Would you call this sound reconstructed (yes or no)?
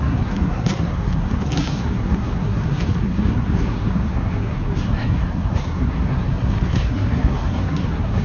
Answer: yes